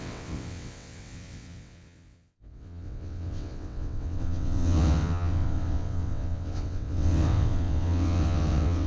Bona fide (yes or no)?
no